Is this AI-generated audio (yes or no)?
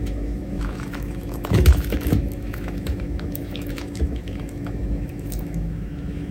yes